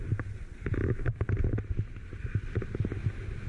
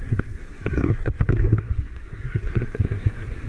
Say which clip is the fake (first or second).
second